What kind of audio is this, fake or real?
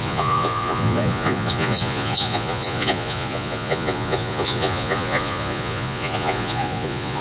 fake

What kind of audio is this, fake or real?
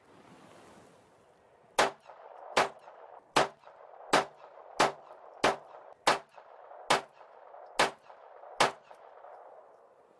real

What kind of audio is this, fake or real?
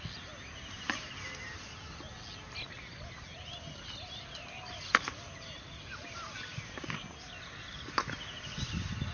real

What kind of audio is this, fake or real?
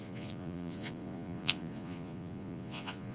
fake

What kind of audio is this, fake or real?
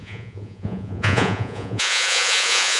fake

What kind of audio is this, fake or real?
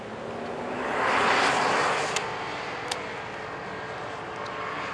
real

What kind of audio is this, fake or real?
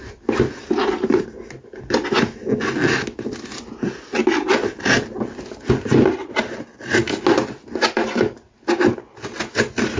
real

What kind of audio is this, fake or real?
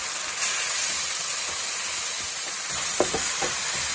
real